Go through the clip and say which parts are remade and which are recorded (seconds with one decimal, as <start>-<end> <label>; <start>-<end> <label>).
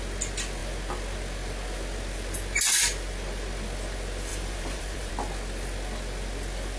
0.0-4.3 recorded; 4.3-5.1 remade; 5.1-6.8 recorded